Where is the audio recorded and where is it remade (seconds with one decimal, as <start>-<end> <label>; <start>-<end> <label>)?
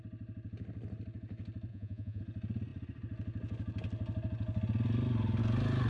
0.0-1.7 recorded; 1.7-2.2 remade; 2.2-5.9 recorded